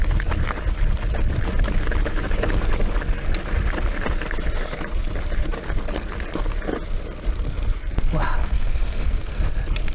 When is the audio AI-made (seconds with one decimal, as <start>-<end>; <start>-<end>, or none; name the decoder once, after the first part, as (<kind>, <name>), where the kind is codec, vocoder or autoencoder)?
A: 8.4-9.4 (codec, SNAC)